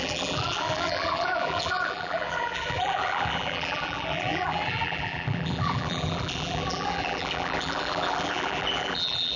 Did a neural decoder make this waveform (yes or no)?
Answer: yes